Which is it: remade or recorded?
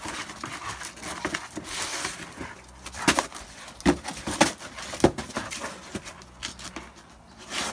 recorded